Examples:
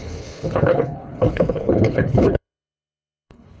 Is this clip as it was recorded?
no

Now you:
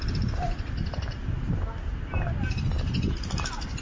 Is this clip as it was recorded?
yes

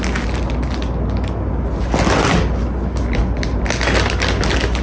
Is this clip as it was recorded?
yes